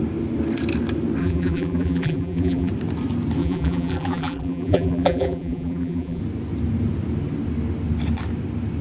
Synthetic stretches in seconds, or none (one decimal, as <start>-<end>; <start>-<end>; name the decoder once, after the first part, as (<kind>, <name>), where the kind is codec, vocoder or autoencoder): 1.2-2.7 (vocoder, BigVGAN v2); 3.4-6.2